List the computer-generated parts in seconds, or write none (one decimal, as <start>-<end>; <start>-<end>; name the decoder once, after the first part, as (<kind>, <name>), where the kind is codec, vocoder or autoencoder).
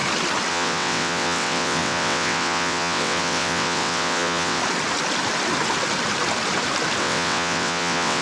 0.5-4.6 (vocoder, WaveNeXt); 7.0-8.2